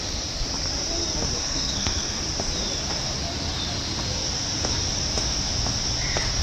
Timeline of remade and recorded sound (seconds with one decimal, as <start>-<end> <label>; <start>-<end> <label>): 0.0-1.4 recorded; 1.4-2.2 remade; 2.2-6.4 recorded